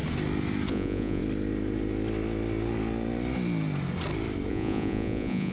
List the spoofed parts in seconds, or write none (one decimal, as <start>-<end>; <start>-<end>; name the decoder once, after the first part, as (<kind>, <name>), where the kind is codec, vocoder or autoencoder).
0.7-1.2 (vocoder, Vocos); 4.5-5.5